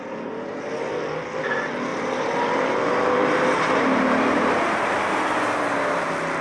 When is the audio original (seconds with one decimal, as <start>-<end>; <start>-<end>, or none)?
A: 0.0-1.9; 4.6-6.4

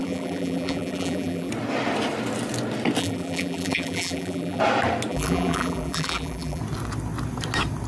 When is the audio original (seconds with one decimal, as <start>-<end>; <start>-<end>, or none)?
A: 1.5-3.0; 4.6-5.1; 6.6-7.9

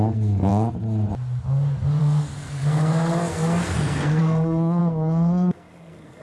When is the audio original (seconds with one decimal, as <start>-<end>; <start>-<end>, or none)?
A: 0.5-2.0

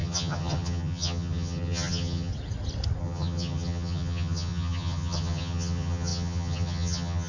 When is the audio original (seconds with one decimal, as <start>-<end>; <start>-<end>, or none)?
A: 2.3-3.0